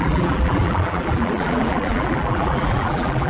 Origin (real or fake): fake